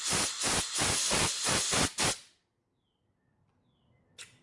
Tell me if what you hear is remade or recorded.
recorded